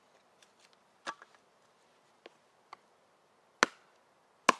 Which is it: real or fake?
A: real